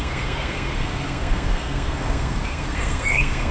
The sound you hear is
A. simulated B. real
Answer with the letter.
A